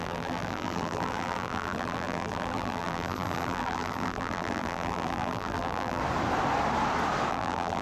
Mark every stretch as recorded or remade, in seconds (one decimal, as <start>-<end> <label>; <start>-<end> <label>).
0.0-6.0 remade; 6.0-7.3 recorded; 7.3-7.8 remade